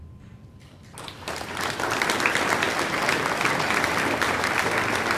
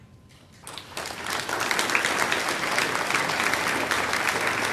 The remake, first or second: first